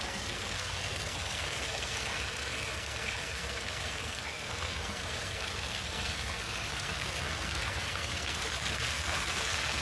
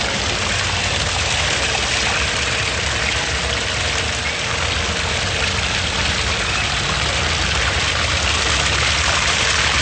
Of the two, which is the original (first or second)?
second